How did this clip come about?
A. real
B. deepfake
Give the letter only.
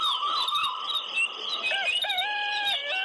A